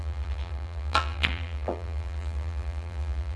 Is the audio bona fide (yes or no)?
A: no